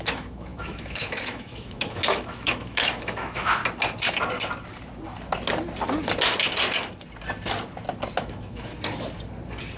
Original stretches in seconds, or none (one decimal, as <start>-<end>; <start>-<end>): 3.6-8.2; 8.7-9.8